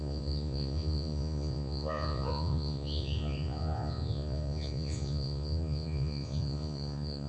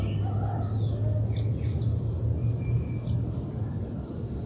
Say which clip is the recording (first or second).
second